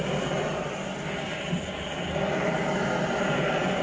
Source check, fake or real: real